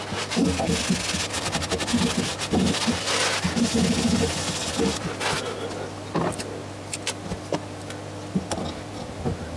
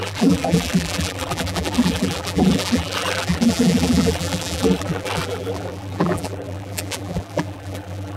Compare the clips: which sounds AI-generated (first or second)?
second